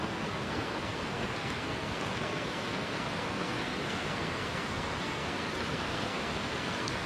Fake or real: fake